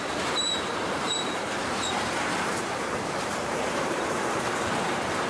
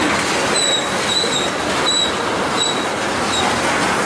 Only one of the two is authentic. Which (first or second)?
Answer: second